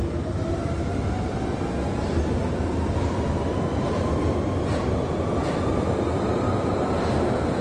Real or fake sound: real